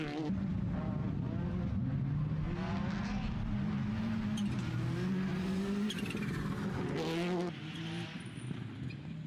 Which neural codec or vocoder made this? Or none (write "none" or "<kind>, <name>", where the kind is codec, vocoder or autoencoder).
none